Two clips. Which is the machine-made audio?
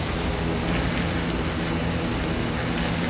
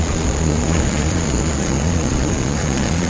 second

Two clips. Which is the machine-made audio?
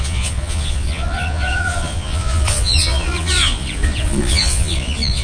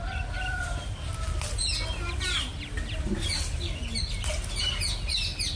first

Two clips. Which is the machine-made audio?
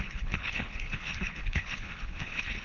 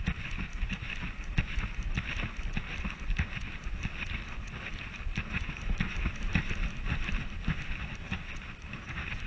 first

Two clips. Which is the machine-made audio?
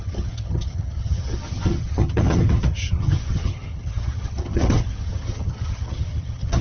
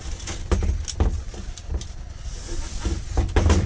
first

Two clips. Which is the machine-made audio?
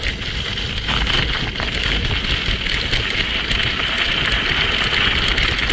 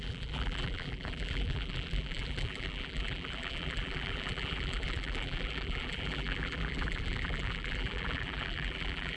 second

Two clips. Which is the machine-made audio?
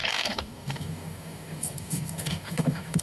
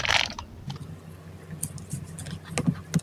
first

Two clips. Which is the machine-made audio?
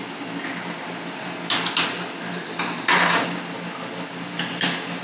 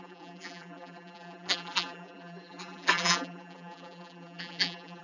second